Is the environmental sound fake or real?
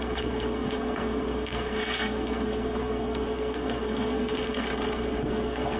fake